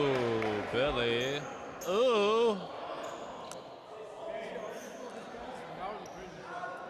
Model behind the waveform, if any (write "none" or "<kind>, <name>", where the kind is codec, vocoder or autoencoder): none